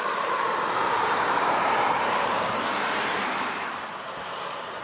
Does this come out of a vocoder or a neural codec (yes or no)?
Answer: yes